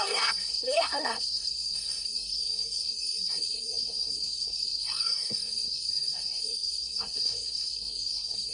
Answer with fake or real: fake